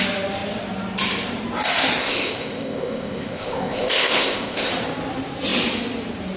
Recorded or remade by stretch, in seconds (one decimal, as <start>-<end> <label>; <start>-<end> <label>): 0.0-2.0 recorded; 2.0-4.7 remade; 4.7-6.4 recorded